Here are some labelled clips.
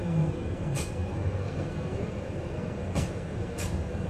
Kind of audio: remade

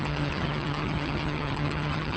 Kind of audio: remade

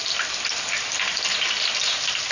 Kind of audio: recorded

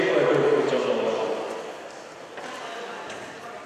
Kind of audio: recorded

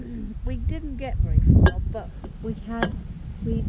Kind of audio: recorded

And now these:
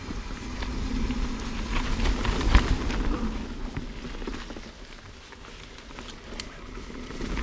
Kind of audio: recorded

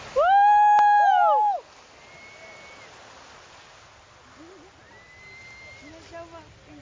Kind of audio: recorded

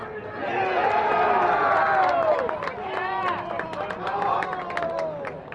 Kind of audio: recorded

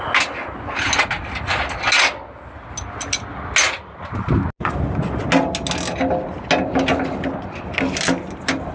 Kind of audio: recorded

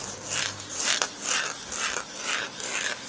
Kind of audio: recorded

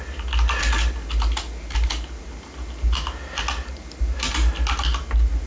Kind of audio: recorded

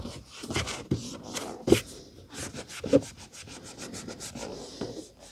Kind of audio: recorded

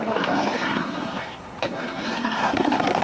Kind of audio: remade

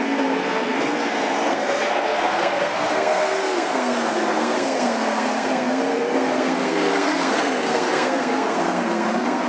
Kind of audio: remade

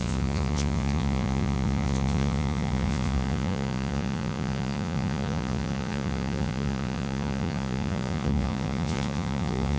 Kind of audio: remade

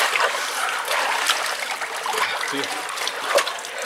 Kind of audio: recorded